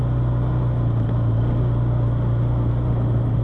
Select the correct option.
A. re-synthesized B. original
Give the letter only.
B